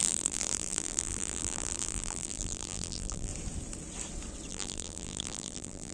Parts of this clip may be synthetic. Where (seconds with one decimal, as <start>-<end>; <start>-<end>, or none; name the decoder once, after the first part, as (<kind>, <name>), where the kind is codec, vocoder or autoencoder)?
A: 0.0-3.3 (vocoder, BigVGAN v2); 4.5-5.9